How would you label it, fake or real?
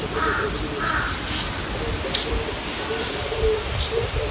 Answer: real